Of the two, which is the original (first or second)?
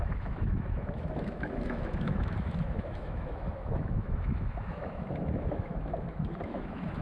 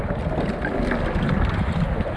second